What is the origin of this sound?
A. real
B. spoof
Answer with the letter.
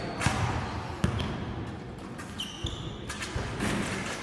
A